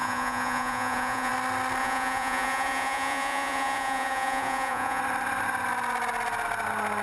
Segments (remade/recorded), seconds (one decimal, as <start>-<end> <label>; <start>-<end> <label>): 0.0-1.3 remade; 1.3-1.8 recorded; 1.8-5.0 remade; 5.0-7.0 recorded